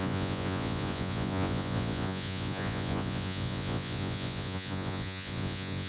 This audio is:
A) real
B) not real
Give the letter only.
B